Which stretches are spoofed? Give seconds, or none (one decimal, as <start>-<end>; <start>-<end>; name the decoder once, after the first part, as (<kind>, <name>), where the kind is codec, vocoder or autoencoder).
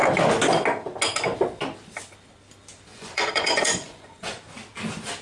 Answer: 2.9-4.4 (vocoder, Vocos)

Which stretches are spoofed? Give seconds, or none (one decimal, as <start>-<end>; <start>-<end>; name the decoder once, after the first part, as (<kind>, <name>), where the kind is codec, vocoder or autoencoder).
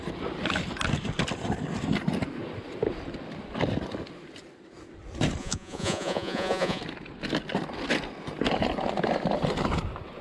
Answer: 5.4-6.8 (vocoder, Vocos)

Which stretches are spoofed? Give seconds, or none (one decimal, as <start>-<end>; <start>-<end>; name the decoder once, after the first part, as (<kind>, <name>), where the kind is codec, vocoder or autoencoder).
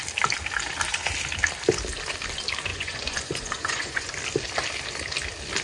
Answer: 2.7-4.1 (vocoder, Vocos)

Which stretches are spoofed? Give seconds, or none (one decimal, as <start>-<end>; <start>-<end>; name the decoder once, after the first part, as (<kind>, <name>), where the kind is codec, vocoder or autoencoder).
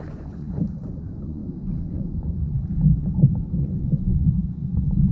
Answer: 0.0-2.5 (vocoder, Vocos); 3.6-5.1